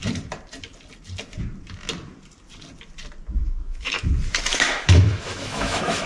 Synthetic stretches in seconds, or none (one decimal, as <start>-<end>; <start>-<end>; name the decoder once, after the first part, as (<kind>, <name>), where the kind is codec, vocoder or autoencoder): 3.4-4.1 (autoencoder, DAC-VAE); 4.5-6.1